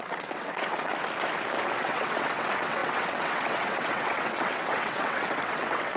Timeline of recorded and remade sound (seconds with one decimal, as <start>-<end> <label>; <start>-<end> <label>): 0.0-0.9 remade; 0.9-1.8 recorded; 1.8-6.0 remade